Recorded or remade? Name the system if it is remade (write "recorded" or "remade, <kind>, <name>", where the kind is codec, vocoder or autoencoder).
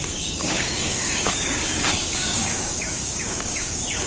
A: remade, codec, DAC